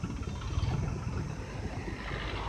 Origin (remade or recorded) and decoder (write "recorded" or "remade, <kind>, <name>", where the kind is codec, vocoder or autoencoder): recorded